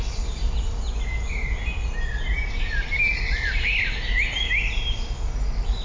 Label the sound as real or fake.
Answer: real